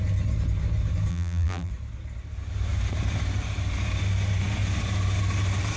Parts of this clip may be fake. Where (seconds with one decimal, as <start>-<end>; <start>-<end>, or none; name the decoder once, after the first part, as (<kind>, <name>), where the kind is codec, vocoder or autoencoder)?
1.1-1.7 (vocoder, BigVGAN v2)